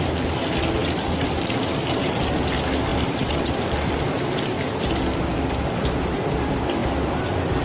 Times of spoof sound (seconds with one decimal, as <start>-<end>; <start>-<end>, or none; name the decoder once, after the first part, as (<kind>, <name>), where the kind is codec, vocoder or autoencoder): 2.9-4.8 (vocoder, BigVGAN v2); 6.8-7.6